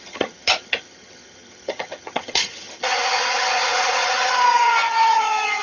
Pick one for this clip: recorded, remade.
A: remade